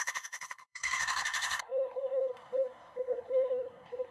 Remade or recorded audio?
remade